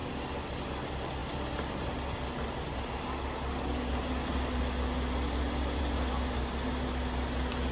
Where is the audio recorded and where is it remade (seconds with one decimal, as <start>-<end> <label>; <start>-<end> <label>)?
0.0-7.7 recorded